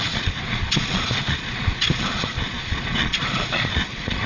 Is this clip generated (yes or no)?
yes